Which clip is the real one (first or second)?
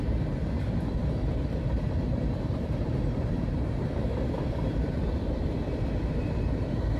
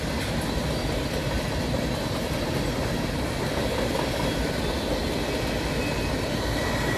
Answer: second